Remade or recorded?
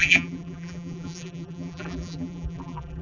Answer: remade